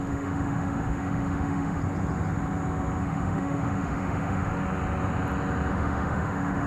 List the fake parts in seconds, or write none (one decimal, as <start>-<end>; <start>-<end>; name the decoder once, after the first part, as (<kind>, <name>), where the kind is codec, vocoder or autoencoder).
0.0-1.8 (autoencoder, DAC-VAE); 3.0-4.5; 5.7-6.7